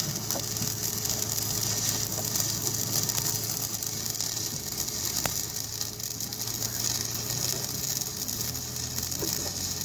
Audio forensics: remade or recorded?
recorded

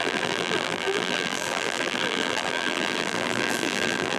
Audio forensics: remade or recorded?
remade